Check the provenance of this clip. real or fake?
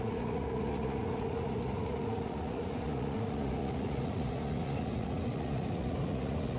fake